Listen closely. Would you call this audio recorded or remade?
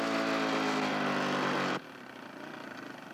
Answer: recorded